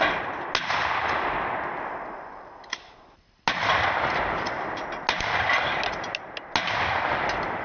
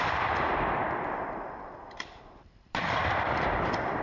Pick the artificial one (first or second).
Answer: second